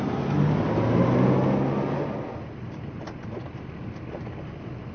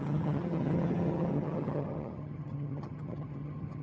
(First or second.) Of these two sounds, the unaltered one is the first